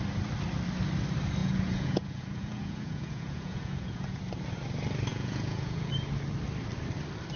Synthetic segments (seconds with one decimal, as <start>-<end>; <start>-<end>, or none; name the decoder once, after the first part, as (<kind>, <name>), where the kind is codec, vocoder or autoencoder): 1.4-4.2 (vocoder, Vocos); 5.1-5.9